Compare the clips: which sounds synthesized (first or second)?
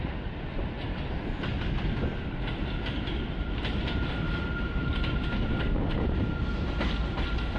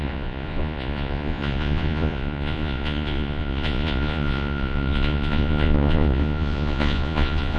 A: second